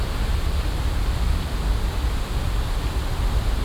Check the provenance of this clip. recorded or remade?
recorded